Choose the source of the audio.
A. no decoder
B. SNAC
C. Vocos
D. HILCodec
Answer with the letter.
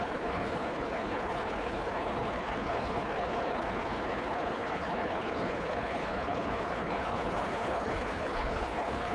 D